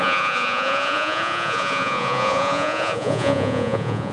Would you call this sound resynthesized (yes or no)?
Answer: yes